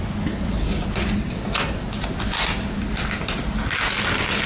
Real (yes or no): yes